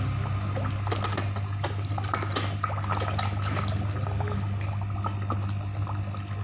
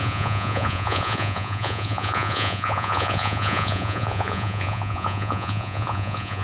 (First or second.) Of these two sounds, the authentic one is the first